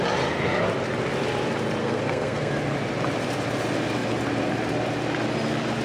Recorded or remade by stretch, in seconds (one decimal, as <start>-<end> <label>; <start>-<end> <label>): 0.0-1.8 recorded; 1.8-2.5 remade; 2.5-5.8 recorded